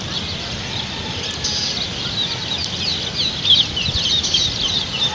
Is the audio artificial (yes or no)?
no